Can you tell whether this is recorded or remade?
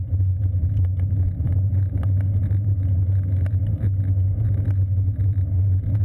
recorded